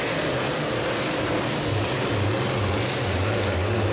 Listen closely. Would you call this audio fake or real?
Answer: real